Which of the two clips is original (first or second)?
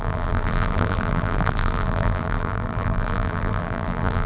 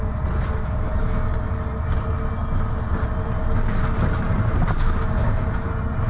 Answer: second